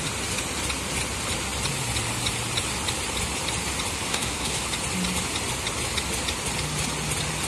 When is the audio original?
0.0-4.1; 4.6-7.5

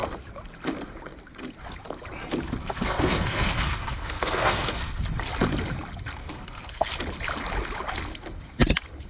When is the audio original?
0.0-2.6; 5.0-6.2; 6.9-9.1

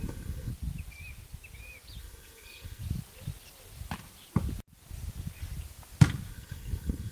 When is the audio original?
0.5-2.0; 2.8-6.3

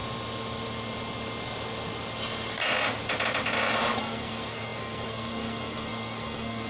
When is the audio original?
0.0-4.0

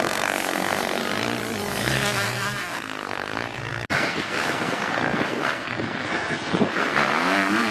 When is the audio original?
1.0-1.7